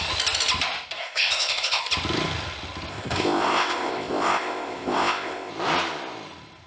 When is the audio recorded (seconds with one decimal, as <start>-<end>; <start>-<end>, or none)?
0.0-1.0; 1.9-2.9; 5.5-6.7